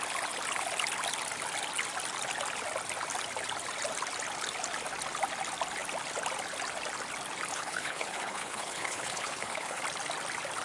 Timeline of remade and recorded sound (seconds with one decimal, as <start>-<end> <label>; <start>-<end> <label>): 0.0-7.5 recorded; 7.5-9.8 remade; 9.8-10.6 recorded